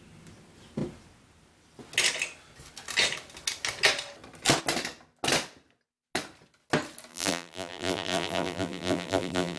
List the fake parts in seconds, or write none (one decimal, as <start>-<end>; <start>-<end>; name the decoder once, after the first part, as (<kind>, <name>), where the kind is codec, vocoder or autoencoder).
7.1-9.6 (vocoder, BigVGAN v2)